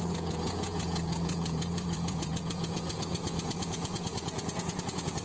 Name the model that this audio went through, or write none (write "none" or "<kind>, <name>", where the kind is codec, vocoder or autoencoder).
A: vocoder, Vocos